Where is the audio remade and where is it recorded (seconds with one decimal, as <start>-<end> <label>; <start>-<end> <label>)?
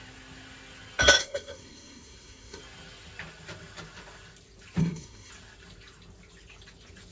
0.0-1.2 recorded; 1.2-2.6 remade; 2.6-4.8 recorded; 4.8-5.3 remade; 5.3-7.1 recorded